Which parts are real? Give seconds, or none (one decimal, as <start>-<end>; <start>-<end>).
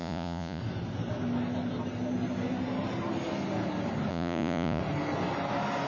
0.6-4.1; 4.8-5.9